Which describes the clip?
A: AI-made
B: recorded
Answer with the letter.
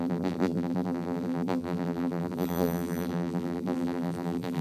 A